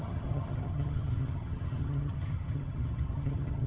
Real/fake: fake